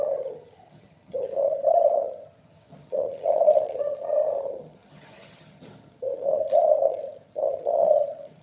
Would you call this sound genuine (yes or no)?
no